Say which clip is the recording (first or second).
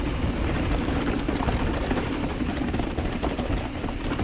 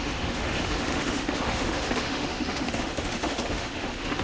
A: first